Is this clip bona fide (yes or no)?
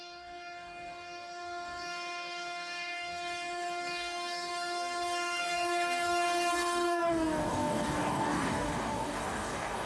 no